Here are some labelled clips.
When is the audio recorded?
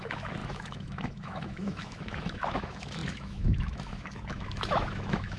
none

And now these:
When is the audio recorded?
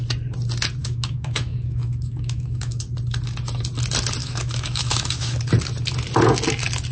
0.0-0.8; 2.8-4.2; 5.4-6.9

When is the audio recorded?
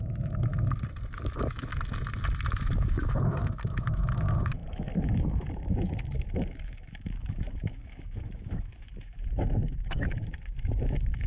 0.5-1.1; 1.7-2.5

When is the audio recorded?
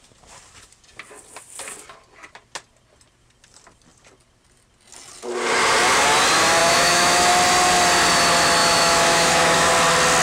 0.0-6.6; 7.3-8.6; 9.7-10.2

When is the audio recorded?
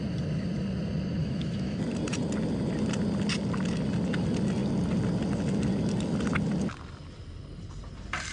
0.0-1.2; 1.8-8.3